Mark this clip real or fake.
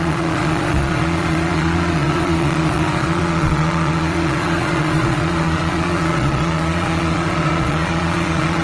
fake